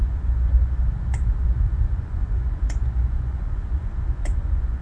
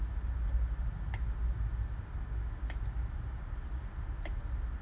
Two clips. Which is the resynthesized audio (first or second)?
first